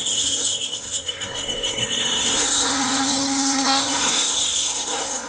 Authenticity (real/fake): fake